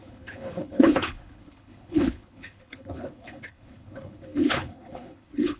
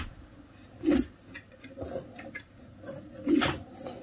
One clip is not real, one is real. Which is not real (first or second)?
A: first